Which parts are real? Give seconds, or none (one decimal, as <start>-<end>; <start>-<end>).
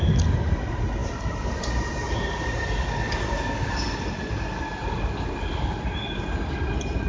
0.0-7.1